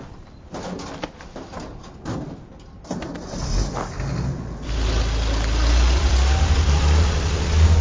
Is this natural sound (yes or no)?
yes